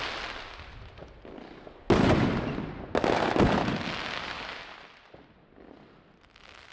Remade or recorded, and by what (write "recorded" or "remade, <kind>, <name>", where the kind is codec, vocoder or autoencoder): recorded